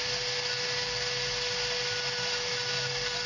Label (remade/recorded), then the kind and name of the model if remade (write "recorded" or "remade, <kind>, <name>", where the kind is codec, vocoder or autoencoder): recorded